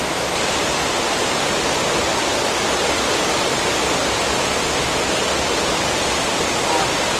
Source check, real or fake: real